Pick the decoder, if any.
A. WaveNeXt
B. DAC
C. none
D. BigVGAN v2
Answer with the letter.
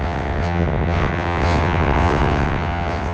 A